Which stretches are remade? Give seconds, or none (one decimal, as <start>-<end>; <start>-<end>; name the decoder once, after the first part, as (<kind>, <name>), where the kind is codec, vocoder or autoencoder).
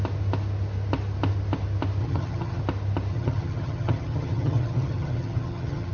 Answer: 2.0-2.6 (vocoder, HiFi-GAN); 3.1-5.9